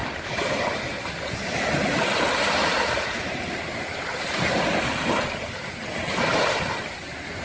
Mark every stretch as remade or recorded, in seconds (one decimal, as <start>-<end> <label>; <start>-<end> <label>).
0.0-7.4 recorded